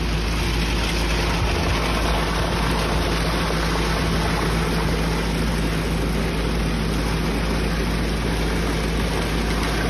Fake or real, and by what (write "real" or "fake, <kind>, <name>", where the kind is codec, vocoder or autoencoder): real